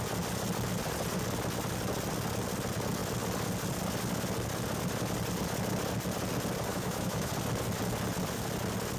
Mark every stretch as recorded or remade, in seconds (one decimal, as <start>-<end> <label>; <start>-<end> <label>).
0.0-6.7 recorded; 6.7-7.3 remade; 7.3-9.0 recorded